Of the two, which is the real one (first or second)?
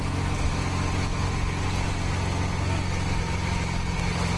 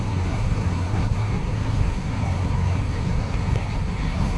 first